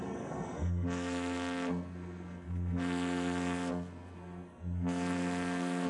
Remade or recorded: remade